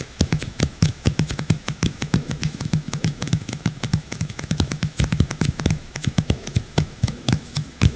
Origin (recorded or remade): remade